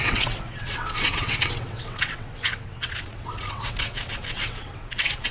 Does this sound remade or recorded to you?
remade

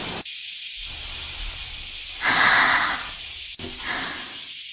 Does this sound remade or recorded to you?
recorded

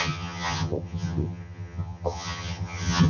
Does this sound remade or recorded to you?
remade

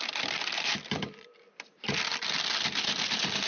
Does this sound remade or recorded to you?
recorded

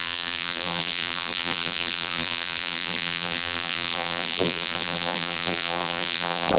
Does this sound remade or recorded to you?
remade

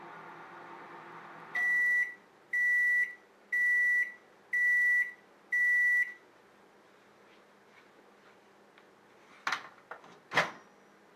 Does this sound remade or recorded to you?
recorded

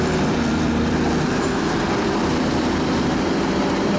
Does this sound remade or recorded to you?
remade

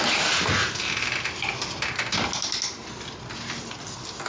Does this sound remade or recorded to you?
recorded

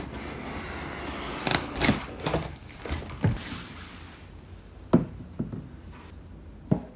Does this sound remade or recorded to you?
recorded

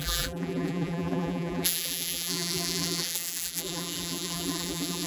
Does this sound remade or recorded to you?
remade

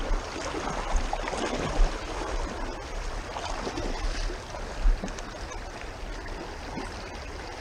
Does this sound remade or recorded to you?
recorded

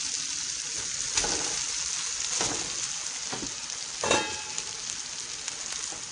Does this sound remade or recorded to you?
recorded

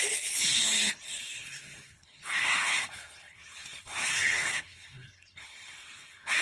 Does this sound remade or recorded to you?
remade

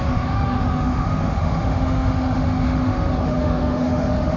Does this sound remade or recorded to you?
remade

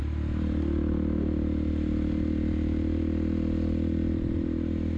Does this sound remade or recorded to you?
recorded